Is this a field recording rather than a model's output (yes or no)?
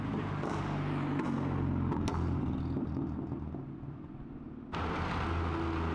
yes